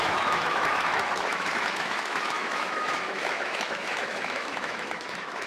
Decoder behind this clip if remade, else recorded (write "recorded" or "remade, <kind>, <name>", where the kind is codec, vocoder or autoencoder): remade, autoencoder, DAC-VAE